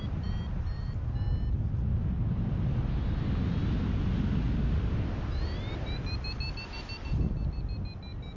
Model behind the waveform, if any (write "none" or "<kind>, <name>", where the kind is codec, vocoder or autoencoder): none